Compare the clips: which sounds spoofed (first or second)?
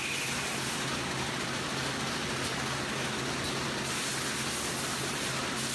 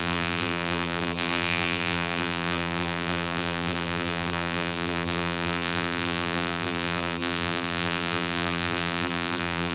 second